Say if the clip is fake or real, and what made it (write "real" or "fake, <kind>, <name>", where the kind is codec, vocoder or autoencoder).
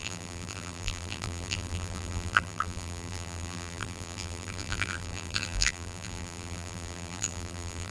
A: fake, vocoder, BigVGAN v2